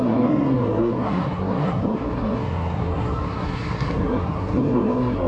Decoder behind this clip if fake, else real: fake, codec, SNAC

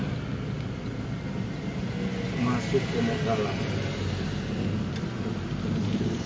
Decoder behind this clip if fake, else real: real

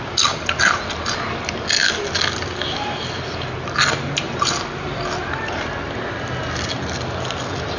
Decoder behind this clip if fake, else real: real